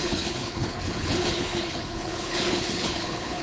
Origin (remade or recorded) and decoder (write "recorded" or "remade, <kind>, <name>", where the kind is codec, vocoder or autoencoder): remade, codec, HILCodec